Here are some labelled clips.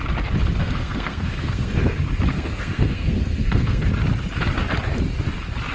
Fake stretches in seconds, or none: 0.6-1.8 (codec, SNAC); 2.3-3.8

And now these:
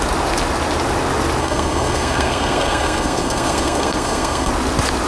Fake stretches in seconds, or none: 1.4-4.5 (codec, SNAC)

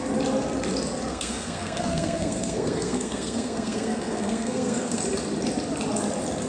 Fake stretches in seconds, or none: 1.1-5.0 (codec, SNAC)

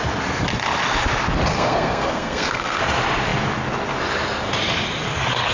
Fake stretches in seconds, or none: 1.5-2.8 (codec, SNAC)

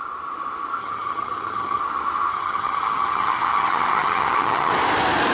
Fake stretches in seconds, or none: 0.8-1.8 (vocoder, HiFi-GAN); 2.3-4.7

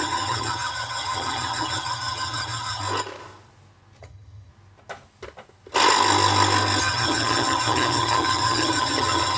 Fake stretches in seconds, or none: 0.0-2.8 (vocoder, HiFi-GAN); 4.0-4.5; 6.8-9.4

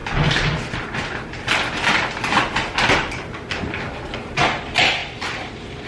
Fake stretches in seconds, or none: none

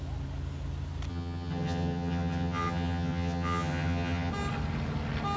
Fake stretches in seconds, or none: 1.1-4.3 (vocoder, HiFi-GAN)